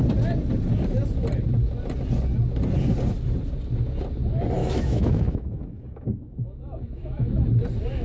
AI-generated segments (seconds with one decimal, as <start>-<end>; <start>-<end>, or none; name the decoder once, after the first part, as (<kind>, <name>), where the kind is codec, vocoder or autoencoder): 4.6-7.5 (autoencoder, DAC-VAE)